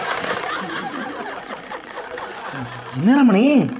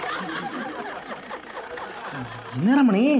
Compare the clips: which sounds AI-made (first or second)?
first